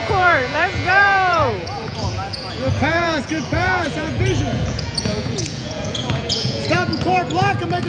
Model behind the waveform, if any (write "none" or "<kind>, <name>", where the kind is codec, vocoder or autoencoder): vocoder, Vocos